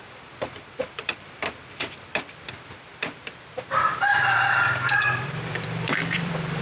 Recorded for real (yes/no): no